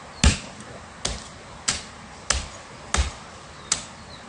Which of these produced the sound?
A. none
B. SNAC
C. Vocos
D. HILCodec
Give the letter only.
A